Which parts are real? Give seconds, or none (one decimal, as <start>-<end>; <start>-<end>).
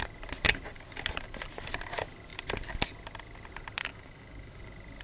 0.0-3.9; 4.6-5.0